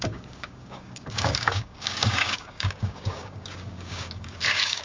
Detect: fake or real fake